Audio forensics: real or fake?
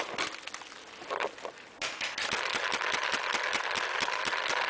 real